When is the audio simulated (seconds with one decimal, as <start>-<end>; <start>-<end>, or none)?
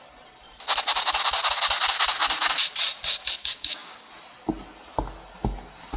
3.4-4.1